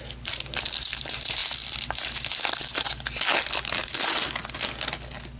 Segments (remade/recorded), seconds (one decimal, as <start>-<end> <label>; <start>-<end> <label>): 0.0-5.4 recorded